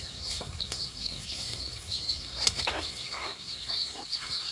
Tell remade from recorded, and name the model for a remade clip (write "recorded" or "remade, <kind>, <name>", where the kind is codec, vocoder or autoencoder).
remade, codec, SNAC